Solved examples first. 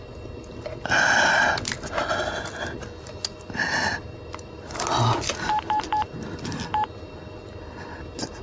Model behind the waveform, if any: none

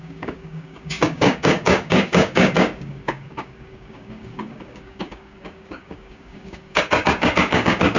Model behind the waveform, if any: codec, DAC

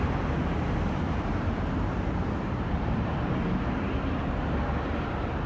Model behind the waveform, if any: vocoder, BigVGAN v2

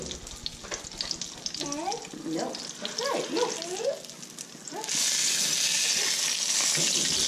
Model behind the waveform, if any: none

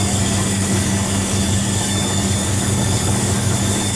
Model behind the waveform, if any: codec, DAC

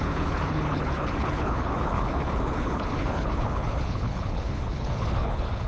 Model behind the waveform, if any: codec, HILCodec